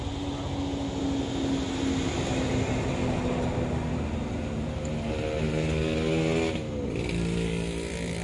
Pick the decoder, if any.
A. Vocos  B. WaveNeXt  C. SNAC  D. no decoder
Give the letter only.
D